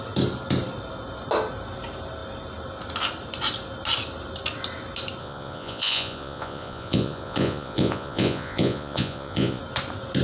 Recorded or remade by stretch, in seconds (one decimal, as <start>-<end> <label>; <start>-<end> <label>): 0.0-5.2 recorded; 5.2-9.6 remade; 9.6-10.2 recorded